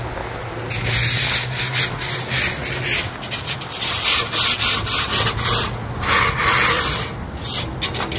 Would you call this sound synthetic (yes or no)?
no